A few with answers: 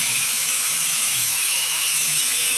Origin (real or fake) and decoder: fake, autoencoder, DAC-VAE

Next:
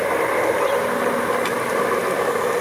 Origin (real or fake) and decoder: real